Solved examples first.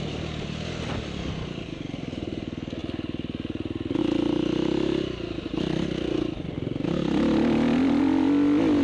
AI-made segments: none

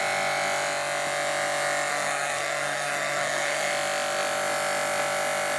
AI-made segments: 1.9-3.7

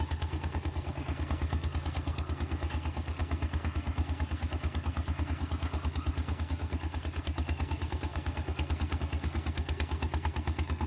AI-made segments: 0.0-10.9

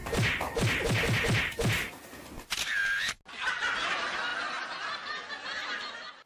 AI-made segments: none

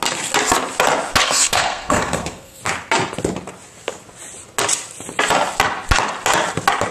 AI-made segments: 1.2-2.6

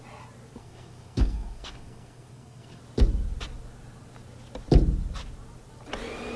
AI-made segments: 0.6-2.8